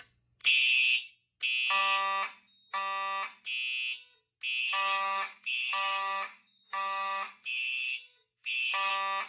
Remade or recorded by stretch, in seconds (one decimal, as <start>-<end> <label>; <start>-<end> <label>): 0.0-0.4 recorded; 0.4-1.1 remade; 1.1-4.6 recorded; 4.6-8.9 remade; 8.9-9.3 recorded